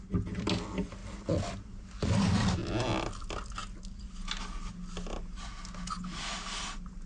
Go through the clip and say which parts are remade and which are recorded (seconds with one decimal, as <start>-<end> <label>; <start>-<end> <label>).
0.0-1.0 recorded; 1.0-1.8 remade; 1.8-7.1 recorded